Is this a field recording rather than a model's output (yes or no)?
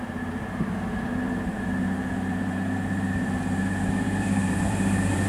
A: no